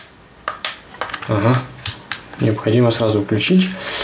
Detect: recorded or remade recorded